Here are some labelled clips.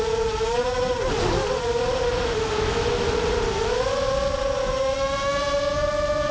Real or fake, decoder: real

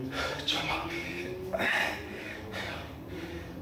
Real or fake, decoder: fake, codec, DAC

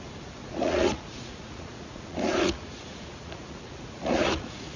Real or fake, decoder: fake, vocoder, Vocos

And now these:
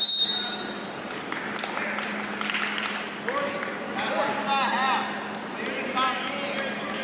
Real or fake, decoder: real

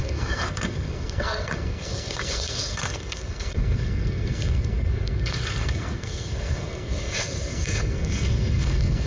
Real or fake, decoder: fake, codec, SNAC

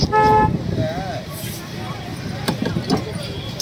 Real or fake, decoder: real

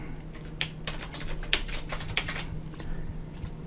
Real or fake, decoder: real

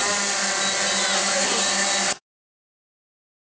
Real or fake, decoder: real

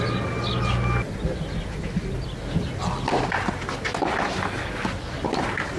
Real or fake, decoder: real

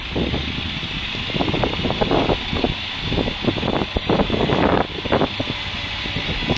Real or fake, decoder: real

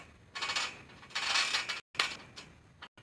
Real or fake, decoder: real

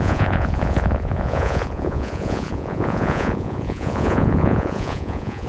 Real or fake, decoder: fake, vocoder, Vocos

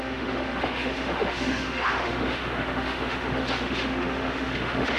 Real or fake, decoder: fake, autoencoder, DAC-VAE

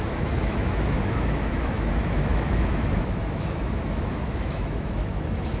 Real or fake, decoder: fake, autoencoder, DAC-VAE